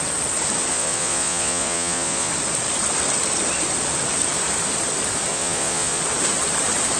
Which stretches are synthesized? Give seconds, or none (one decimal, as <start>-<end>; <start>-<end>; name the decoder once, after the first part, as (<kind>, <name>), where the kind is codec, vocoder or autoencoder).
0.7-2.3 (vocoder, Vocos); 5.3-6.0